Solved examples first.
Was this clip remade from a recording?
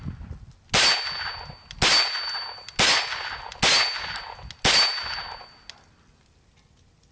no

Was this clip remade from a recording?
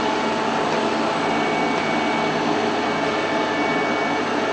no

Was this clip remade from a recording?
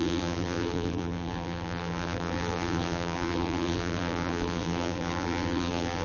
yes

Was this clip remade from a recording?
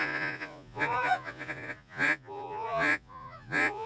yes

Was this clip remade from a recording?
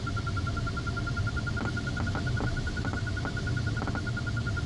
no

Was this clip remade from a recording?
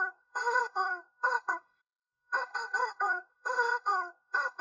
yes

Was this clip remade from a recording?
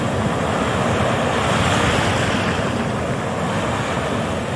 no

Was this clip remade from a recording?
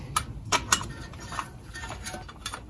no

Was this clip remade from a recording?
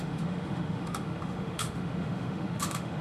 yes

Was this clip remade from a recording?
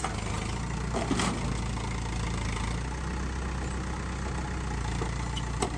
no